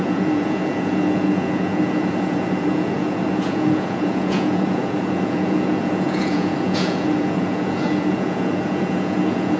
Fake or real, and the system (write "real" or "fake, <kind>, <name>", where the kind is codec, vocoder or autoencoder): fake, vocoder, Vocos